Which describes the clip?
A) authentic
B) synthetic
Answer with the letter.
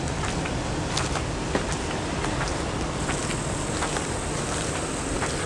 A